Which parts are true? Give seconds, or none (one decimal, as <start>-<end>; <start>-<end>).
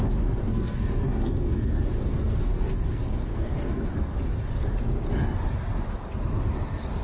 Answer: 4.2-7.0